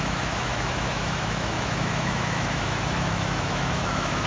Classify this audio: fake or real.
fake